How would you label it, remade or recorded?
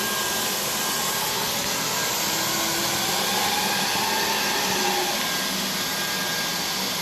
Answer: recorded